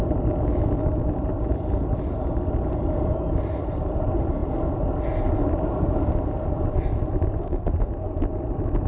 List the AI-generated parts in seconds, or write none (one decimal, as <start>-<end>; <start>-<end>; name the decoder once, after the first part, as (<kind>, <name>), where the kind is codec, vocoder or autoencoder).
7.4-7.9 (codec, SNAC)